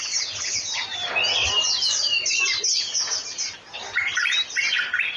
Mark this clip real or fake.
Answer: real